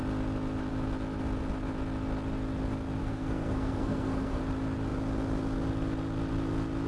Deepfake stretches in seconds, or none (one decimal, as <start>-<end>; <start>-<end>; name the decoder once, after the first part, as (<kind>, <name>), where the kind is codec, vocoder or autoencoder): 3.0-4.4 (codec, SNAC)